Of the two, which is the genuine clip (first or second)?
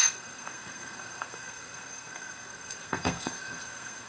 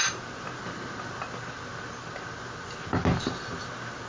second